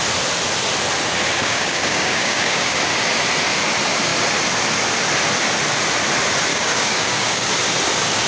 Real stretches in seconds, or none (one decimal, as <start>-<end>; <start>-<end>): 0.0-1.4; 2.8-6.5; 7.5-8.3